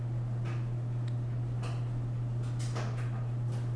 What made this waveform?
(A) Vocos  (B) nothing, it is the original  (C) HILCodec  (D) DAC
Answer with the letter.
B